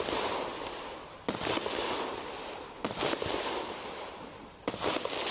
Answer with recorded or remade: recorded